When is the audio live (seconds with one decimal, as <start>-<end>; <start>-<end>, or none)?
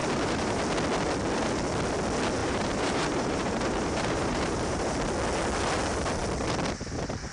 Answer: 0.6-2.4; 4.8-7.3